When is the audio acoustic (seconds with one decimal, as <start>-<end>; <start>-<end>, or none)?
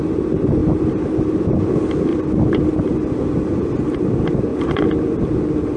0.0-5.8